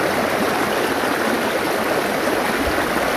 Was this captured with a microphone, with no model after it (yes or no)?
yes